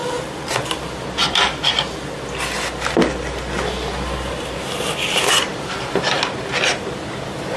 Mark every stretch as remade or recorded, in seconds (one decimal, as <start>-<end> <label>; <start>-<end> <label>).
0.0-7.6 remade